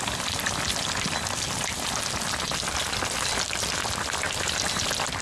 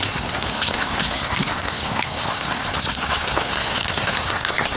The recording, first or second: first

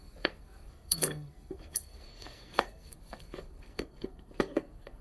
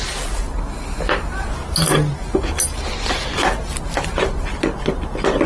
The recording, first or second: second